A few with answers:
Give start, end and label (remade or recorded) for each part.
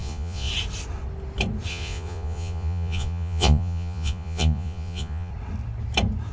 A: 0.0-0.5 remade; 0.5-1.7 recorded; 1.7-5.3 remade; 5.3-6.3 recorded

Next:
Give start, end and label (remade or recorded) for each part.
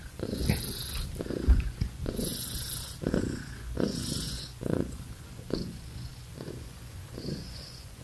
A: 0.0-0.4 remade; 0.4-1.2 recorded; 1.2-8.0 remade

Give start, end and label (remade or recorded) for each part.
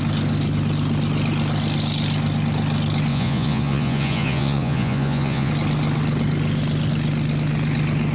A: 0.0-3.1 recorded; 3.1-5.5 remade; 5.5-8.1 recorded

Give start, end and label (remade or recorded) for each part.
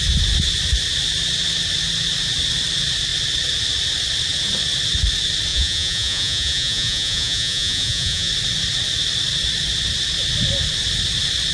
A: 0.0-5.5 recorded; 5.5-8.3 remade; 8.3-11.5 recorded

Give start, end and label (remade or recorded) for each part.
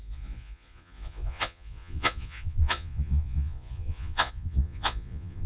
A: 0.0-5.5 remade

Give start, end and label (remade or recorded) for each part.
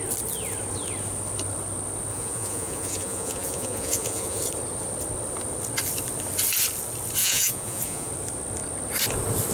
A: 0.0-2.1 recorded; 2.1-4.4 remade; 4.4-7.2 recorded; 7.2-8.1 remade; 8.1-9.5 recorded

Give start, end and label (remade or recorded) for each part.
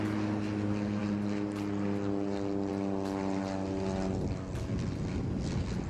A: 0.0-5.9 recorded